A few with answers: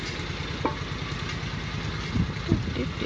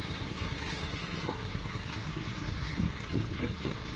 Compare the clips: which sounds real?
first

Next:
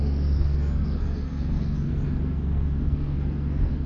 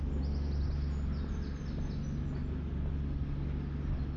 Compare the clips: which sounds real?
second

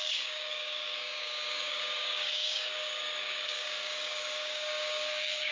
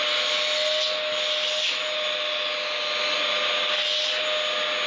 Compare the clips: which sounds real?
second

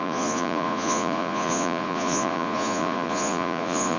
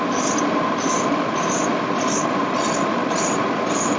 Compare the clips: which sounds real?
second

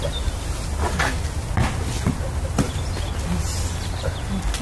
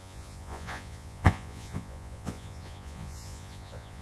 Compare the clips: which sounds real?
first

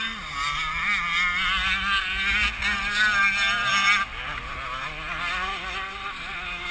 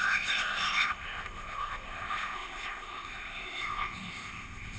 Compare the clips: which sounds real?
first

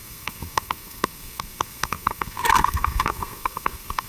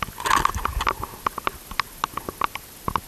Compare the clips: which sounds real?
second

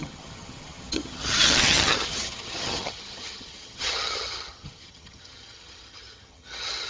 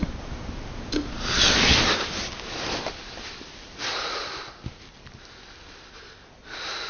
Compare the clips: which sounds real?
second